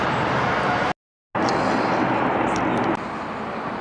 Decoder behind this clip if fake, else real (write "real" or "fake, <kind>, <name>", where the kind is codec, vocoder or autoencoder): real